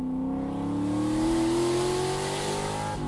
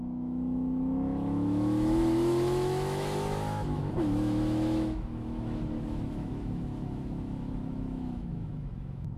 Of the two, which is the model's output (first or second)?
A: second